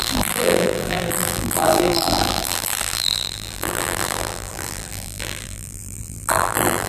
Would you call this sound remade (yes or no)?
yes